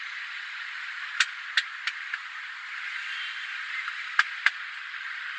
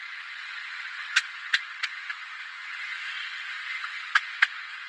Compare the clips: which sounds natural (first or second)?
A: first